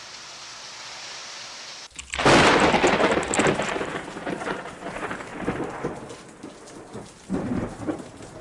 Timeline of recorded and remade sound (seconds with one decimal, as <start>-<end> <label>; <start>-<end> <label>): 0.0-1.2 remade; 1.2-3.8 recorded; 3.8-5.3 remade; 5.3-7.3 recorded; 7.3-8.4 remade